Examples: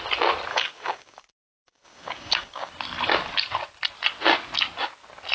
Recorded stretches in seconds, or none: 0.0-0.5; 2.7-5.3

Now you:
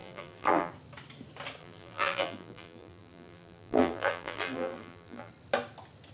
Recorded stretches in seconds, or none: 0.7-1.6; 5.3-6.1

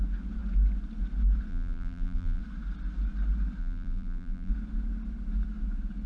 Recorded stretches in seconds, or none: 0.0-1.5; 2.4-3.6; 4.5-6.1

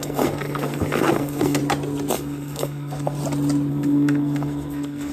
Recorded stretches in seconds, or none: 1.6-2.1; 3.2-3.7